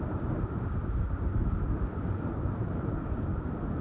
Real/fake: real